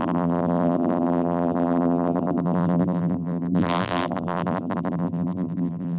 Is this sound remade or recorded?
remade